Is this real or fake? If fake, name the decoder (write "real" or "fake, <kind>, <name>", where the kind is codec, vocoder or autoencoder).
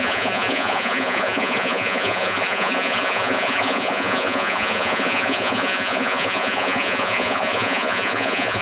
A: fake, vocoder, Vocos